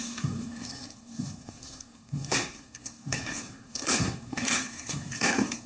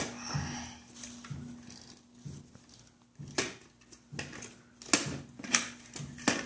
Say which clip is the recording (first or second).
second